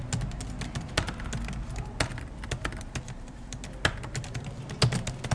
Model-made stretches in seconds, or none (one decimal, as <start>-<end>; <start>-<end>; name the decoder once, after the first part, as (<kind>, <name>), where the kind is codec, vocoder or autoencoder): none